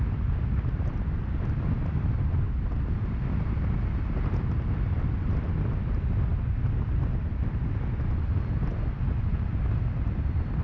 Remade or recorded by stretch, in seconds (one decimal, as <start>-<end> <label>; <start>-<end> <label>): 0.0-10.6 recorded